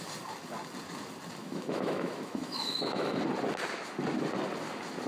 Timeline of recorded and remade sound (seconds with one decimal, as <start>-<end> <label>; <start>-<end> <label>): 0.0-1.4 recorded; 1.4-3.2 remade; 3.2-5.1 recorded